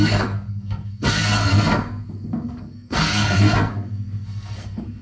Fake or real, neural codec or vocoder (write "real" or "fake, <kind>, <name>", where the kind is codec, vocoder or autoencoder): fake, codec, SNAC